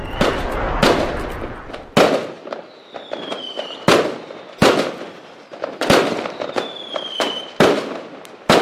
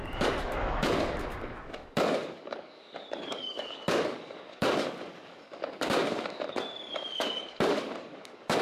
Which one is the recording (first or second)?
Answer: first